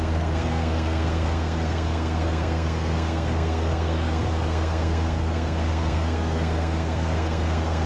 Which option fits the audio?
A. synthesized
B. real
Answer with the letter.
A